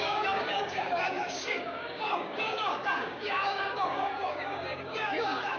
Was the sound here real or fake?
fake